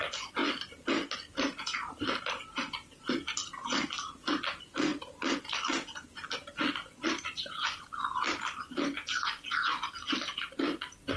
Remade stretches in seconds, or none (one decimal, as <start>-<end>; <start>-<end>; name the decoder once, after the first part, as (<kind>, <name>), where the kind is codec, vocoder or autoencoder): none